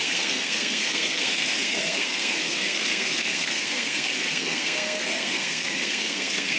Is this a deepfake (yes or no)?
yes